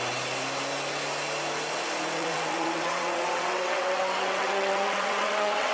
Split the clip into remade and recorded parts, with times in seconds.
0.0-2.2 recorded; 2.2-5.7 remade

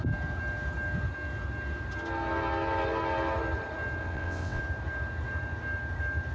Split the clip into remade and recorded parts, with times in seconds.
0.0-4.0 recorded; 4.0-4.6 remade; 4.6-6.3 recorded

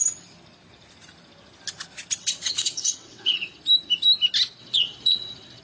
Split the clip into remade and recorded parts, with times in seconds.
0.0-2.2 recorded; 2.2-3.6 remade; 3.6-4.6 recorded; 4.6-5.6 remade